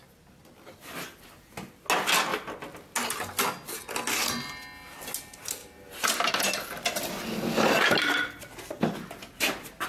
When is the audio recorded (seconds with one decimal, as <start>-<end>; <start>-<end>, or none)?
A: 0.0-9.9